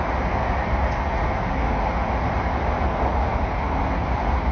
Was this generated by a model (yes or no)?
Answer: no